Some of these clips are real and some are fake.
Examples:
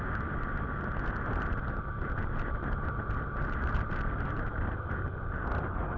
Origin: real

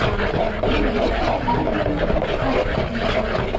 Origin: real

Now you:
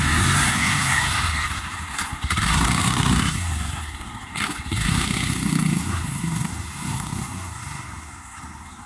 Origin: fake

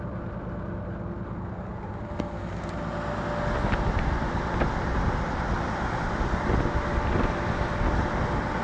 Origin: real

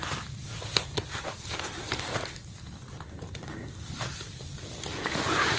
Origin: real